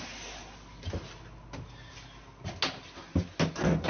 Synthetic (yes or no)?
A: no